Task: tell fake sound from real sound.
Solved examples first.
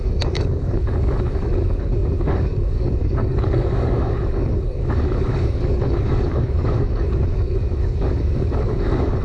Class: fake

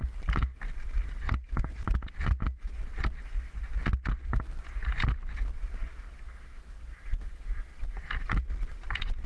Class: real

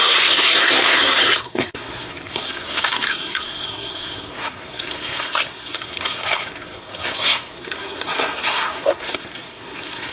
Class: fake